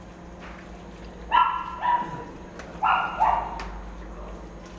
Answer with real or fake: real